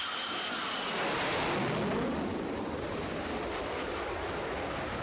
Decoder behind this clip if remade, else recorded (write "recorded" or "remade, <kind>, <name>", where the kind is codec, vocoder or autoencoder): recorded